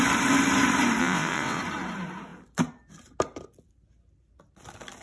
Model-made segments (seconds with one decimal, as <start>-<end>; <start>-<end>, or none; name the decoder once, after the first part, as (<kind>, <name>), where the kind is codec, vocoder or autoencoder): 1.0-1.6 (vocoder, WaveNeXt)